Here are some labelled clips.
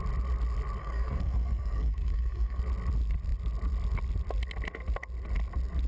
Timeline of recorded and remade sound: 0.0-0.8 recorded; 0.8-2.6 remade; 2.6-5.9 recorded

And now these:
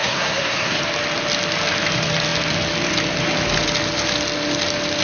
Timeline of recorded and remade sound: 0.0-0.8 remade; 0.8-5.0 recorded

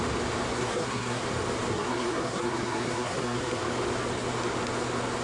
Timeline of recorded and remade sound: 0.0-0.5 recorded; 0.5-1.2 remade; 1.2-1.7 recorded; 1.7-3.6 remade; 3.6-5.2 recorded

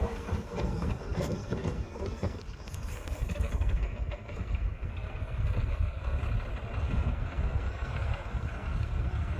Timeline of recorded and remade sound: 0.0-6.2 remade; 6.2-6.8 recorded; 6.8-9.4 remade

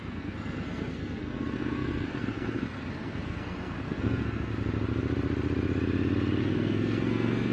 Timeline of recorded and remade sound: 0.0-4.5 remade; 4.5-6.4 recorded; 6.4-7.5 remade